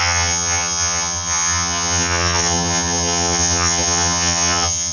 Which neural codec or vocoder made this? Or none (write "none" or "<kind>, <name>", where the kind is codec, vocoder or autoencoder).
vocoder, HiFi-GAN